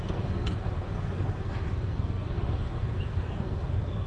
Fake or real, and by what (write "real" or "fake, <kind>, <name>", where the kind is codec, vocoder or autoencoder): fake, codec, SNAC